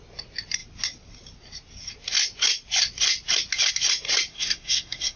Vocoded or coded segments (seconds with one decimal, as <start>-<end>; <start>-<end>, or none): 4.3-5.2